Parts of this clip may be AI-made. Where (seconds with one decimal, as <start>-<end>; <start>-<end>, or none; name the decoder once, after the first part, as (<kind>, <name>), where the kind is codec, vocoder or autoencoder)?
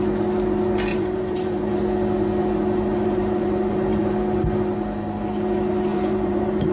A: 0.9-1.8 (vocoder, BigVGAN v2); 2.9-4.1; 5.9-6.7